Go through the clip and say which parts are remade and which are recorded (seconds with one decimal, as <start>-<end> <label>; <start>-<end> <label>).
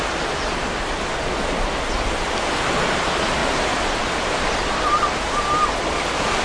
0.0-6.4 recorded